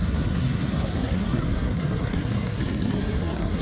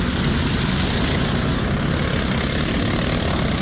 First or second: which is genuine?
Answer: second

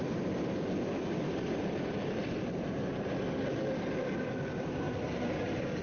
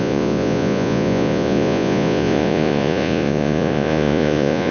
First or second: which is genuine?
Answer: first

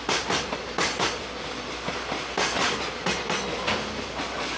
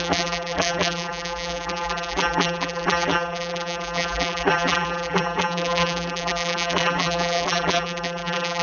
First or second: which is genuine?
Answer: first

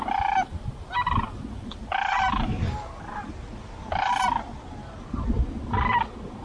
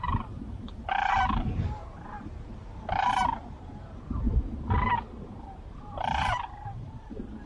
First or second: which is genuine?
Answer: first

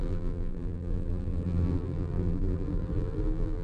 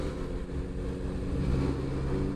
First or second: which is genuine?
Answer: second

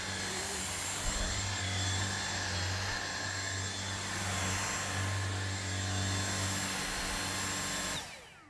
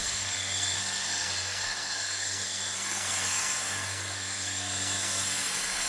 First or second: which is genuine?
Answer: first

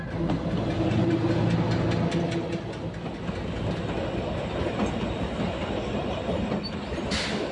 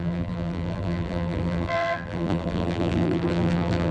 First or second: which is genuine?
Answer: first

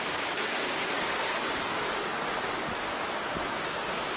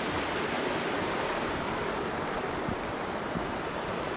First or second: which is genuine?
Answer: second